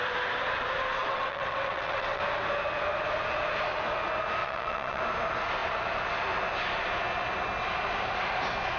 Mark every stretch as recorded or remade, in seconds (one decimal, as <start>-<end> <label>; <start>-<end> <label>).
0.0-1.0 recorded; 1.0-2.2 remade; 2.2-4.4 recorded; 4.4-5.0 remade; 5.0-8.8 recorded